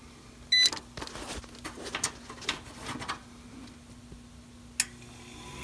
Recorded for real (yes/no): yes